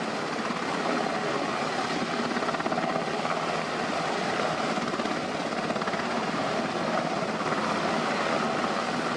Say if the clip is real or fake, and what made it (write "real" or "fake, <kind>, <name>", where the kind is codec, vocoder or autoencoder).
real